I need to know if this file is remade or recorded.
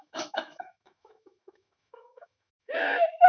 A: remade